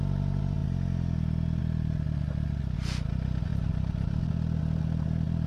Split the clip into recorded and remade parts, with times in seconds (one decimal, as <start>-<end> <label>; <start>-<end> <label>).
0.0-3.5 recorded; 3.5-4.3 remade; 4.3-5.5 recorded